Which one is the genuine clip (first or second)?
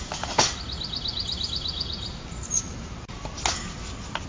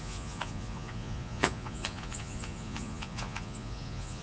first